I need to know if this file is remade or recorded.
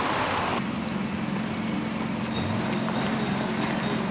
recorded